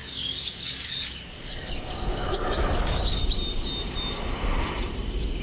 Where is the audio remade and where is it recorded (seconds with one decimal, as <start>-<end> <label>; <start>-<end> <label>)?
0.0-3.2 remade; 3.2-5.4 recorded